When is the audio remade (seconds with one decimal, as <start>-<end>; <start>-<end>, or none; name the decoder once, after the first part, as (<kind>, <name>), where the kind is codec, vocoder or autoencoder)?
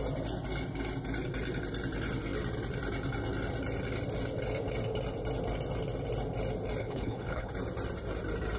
6.8-7.5 (codec, HILCodec)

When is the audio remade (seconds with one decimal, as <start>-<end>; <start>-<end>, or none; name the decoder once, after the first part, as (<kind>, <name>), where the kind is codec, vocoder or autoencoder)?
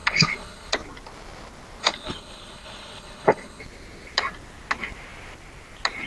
0.0-0.7 (codec, HILCodec); 1.8-3.6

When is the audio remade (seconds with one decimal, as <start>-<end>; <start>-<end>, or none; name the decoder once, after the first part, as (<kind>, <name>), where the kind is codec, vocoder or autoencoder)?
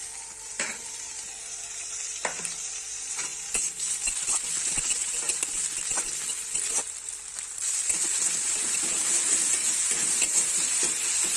none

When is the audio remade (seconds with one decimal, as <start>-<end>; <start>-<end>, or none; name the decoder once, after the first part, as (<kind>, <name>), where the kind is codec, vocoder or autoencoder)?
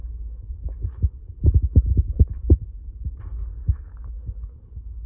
0.0-3.1 (codec, HILCodec); 3.6-5.1